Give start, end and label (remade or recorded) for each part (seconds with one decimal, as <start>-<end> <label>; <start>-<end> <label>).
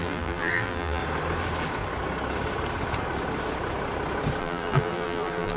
0.0-1.0 remade; 1.0-4.4 recorded; 4.4-5.6 remade